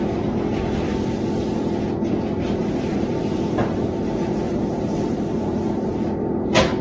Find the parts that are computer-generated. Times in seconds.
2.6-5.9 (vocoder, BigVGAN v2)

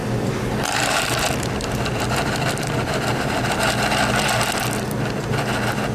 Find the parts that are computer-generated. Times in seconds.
0.0-3.5 (vocoder, BigVGAN v2)

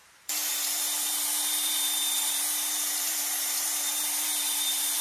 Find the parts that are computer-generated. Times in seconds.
0.0-5.0 (vocoder, BigVGAN v2)